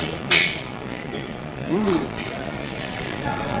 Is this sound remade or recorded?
remade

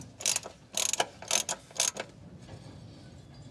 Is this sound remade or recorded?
recorded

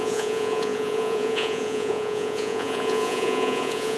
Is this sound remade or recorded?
remade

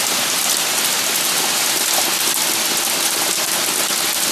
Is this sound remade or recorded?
recorded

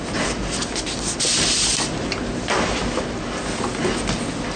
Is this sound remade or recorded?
recorded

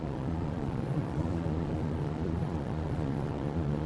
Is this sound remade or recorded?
remade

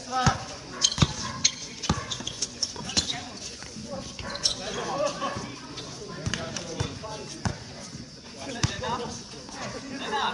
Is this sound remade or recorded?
remade